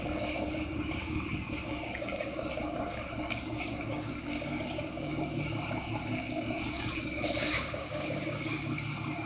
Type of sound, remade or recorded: remade